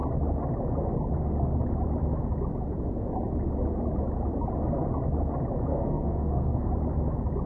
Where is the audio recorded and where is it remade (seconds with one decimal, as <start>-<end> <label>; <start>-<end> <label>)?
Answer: 0.0-5.7 recorded; 5.7-6.7 remade; 6.7-7.5 recorded